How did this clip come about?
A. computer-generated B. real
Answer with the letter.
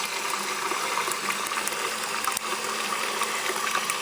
B